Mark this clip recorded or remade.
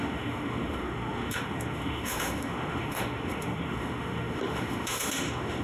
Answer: remade